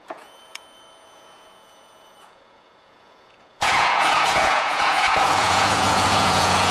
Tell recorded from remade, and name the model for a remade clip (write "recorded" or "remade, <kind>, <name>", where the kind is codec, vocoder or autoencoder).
remade, vocoder, Vocos